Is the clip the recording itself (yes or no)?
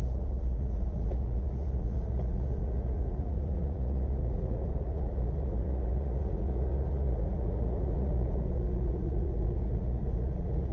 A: no